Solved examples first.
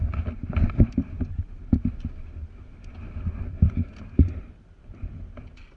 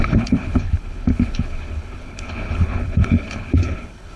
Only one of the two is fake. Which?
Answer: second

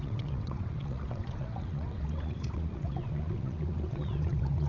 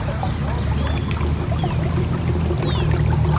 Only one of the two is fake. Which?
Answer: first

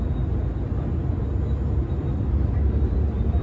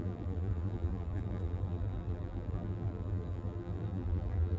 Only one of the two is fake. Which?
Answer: second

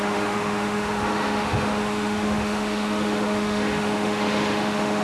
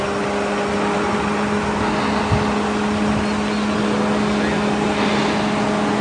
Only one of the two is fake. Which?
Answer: first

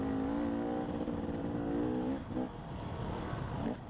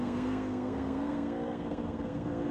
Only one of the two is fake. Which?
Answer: second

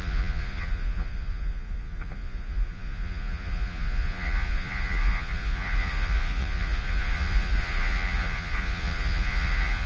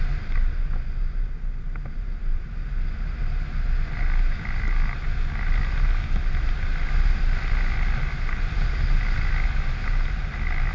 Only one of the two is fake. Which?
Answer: first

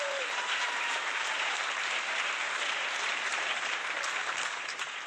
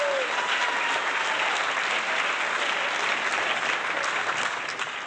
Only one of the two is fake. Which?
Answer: first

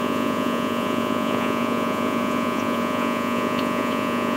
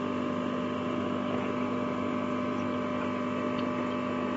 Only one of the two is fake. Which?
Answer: first